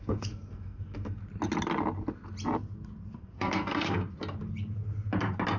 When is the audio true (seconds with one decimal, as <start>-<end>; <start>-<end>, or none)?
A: 1.2-3.2; 4.0-5.6